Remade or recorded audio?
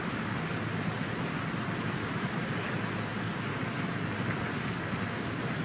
recorded